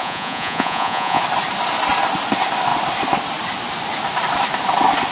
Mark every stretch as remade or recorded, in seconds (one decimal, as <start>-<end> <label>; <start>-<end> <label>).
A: 0.0-1.2 remade; 1.2-5.1 recorded